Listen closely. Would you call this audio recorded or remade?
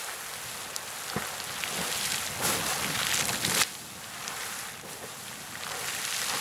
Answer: recorded